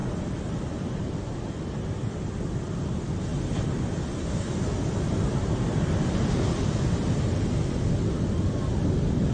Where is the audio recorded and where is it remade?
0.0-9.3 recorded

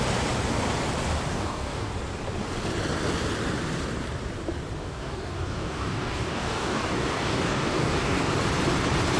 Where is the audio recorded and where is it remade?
0.0-1.3 recorded; 1.3-1.9 remade; 1.9-4.8 recorded; 4.8-8.2 remade; 8.2-9.2 recorded

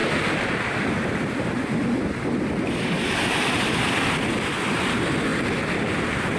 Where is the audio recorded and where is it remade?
0.0-3.8 remade; 3.8-6.4 recorded

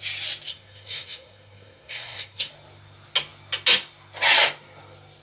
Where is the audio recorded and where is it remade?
0.0-0.5 recorded; 0.5-2.5 remade; 2.5-5.2 recorded